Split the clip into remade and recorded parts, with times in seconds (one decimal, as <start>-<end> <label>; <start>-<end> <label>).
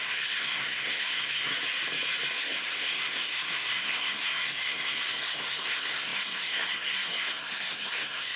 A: 0.0-1.5 remade; 1.5-2.4 recorded; 2.4-8.4 remade